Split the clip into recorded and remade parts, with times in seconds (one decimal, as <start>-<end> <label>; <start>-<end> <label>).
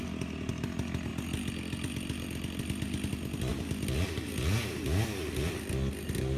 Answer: 0.0-6.4 recorded